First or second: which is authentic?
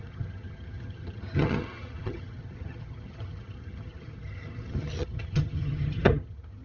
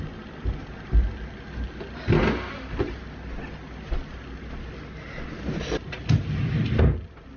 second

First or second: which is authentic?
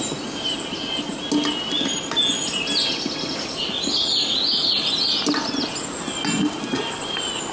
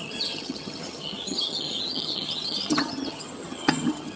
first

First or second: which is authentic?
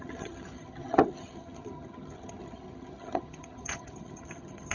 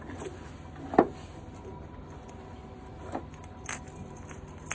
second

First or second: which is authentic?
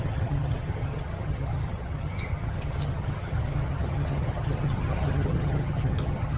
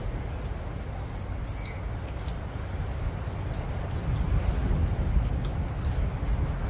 second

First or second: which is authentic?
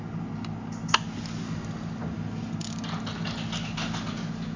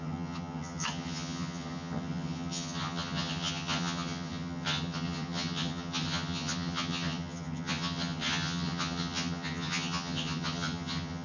first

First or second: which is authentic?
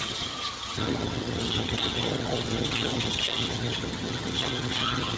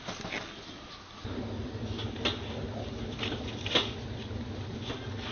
second